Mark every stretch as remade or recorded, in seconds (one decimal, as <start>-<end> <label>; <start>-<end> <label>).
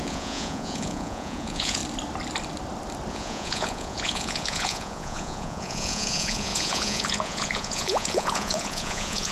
0.0-1.8 remade; 1.8-3.1 recorded; 3.1-9.3 remade